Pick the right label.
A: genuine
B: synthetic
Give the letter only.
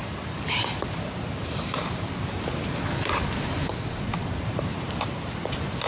B